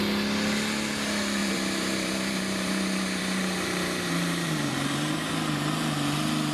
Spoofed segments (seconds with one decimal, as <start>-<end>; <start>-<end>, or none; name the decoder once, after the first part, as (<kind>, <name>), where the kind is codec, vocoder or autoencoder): 1.4-5.3 (vocoder, BigVGAN v2)